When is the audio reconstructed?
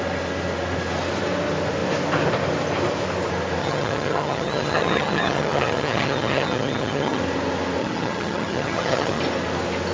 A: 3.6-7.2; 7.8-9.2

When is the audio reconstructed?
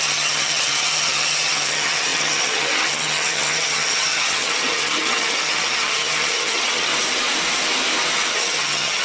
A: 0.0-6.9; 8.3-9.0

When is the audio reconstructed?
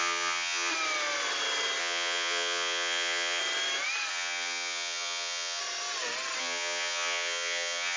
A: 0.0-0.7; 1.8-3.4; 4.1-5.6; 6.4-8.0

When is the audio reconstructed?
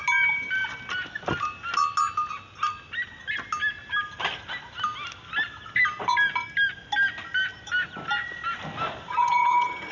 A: 9.1-9.9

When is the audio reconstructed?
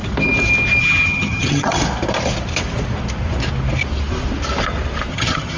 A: 0.8-1.8; 5.1-5.6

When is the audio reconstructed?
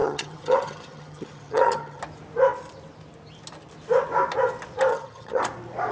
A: 0.0-2.0; 4.9-5.4